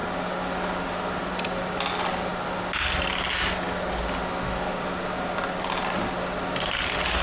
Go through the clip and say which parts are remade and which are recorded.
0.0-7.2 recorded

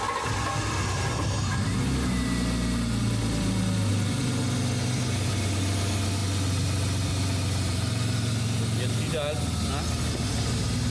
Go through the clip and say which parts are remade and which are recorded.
0.0-10.9 recorded

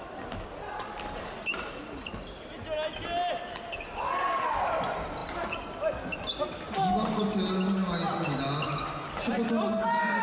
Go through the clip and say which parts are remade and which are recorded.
0.0-10.2 recorded

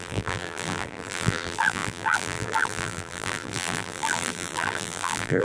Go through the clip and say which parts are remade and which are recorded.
0.0-5.4 remade

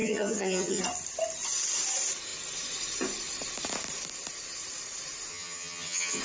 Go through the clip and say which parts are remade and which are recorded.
0.0-0.8 remade; 0.8-5.3 recorded; 5.3-6.2 remade

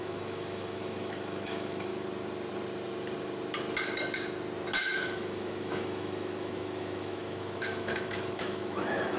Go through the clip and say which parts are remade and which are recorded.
0.0-1.9 remade; 1.9-4.8 recorded; 4.8-9.2 remade

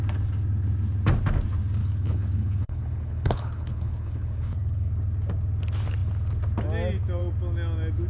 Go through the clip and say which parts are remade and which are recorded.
0.0-1.8 recorded; 1.8-4.9 remade; 4.9-8.1 recorded